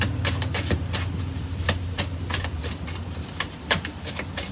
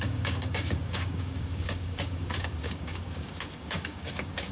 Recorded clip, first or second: first